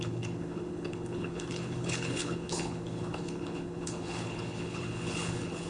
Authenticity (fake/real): fake